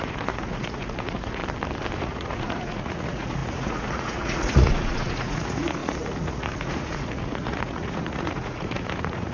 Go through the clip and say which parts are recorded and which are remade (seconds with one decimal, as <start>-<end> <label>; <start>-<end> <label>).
0.0-1.4 remade; 1.4-2.0 recorded; 2.0-9.3 remade